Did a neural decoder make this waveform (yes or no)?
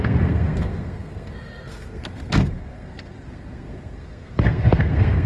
yes